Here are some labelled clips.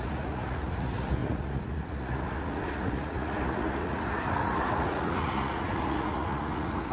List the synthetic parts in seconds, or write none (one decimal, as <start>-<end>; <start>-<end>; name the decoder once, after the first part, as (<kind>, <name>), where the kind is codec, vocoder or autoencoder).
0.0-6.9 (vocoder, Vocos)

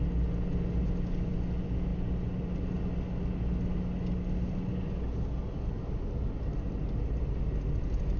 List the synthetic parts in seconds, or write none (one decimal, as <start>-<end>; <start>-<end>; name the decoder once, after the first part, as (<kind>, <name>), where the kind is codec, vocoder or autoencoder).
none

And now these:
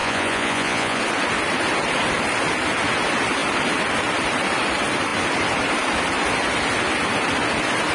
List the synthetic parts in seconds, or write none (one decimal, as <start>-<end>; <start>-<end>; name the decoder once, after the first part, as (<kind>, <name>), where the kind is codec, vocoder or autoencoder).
0.0-1.0 (vocoder, Vocos)

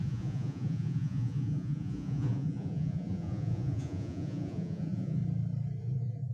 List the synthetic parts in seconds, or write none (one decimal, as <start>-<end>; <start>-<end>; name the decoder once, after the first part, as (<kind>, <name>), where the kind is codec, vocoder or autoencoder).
0.0-5.2 (vocoder, Vocos); 5.8-6.3

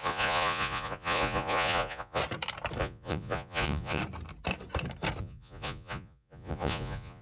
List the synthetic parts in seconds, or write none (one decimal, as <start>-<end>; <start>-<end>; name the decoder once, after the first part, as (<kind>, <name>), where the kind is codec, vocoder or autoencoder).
0.0-2.2 (vocoder, Vocos); 2.8-4.0; 5.2-7.2

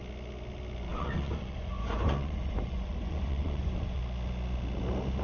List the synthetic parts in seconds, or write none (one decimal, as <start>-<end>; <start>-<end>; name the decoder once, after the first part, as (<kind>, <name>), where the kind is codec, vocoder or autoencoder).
0.9-4.0 (vocoder, Vocos)

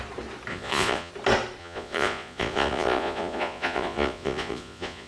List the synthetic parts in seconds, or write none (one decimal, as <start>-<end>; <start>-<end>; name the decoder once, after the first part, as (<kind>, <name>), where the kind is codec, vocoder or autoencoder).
0.5-1.1 (vocoder, Vocos); 1.6-5.1